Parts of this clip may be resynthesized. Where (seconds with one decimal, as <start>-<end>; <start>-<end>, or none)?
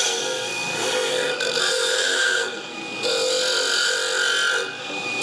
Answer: 0.0-2.8; 4.8-5.2